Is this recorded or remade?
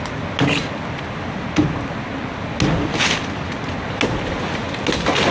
recorded